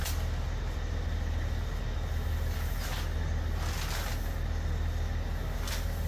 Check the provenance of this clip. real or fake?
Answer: real